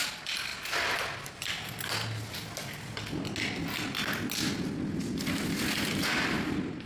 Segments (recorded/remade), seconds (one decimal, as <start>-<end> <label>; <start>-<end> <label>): 0.0-6.9 recorded